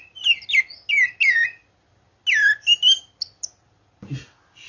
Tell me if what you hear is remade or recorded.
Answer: recorded